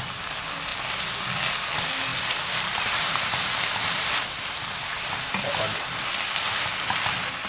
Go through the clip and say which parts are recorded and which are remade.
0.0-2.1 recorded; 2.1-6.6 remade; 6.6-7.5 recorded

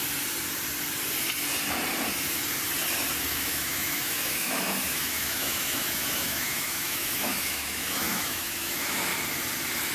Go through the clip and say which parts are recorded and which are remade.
0.0-3.2 recorded; 3.2-9.1 remade; 9.1-9.9 recorded